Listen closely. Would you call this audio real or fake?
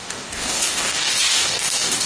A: fake